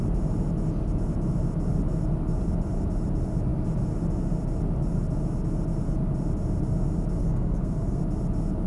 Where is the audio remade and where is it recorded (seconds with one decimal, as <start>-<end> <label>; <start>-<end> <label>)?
0.0-7.2 recorded; 7.2-8.0 remade; 8.0-8.7 recorded

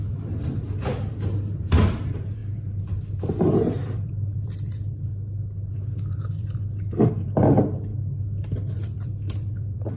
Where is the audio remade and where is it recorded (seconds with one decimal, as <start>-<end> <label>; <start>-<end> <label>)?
0.0-5.1 remade; 5.1-5.7 recorded; 5.7-7.9 remade; 7.9-8.7 recorded; 8.7-10.0 remade

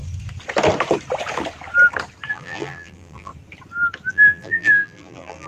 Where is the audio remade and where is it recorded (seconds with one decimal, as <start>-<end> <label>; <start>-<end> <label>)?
0.0-2.3 recorded; 2.3-3.3 remade; 3.3-4.1 recorded; 4.1-5.5 remade

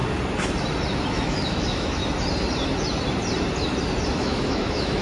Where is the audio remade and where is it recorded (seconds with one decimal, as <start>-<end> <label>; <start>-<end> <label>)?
0.0-1.1 recorded; 1.1-2.0 remade; 2.0-4.1 recorded; 4.1-5.0 remade

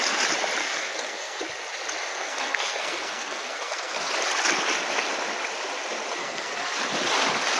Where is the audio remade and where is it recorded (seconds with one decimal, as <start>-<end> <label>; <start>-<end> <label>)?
0.0-0.6 recorded; 0.6-1.4 remade; 1.4-2.1 recorded; 2.1-4.1 remade; 4.1-6.2 recorded; 6.2-6.8 remade; 6.8-7.6 recorded

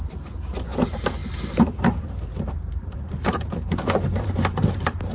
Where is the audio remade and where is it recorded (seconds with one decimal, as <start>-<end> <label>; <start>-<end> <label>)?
0.0-5.1 remade

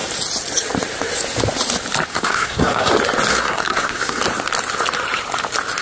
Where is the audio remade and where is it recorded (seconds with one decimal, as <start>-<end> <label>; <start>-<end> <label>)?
0.0-2.1 recorded; 2.1-2.9 remade; 2.9-3.3 recorded; 3.3-4.2 remade; 4.2-5.8 recorded